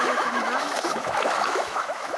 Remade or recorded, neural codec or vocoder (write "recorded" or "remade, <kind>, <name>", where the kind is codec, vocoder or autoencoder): remade, autoencoder, DAC-VAE